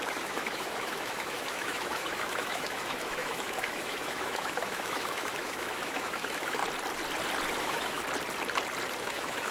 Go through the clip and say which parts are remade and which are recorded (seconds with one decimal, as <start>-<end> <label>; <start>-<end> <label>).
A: 0.0-6.6 remade; 6.6-7.6 recorded; 7.6-8.0 remade; 8.0-9.0 recorded; 9.0-9.5 remade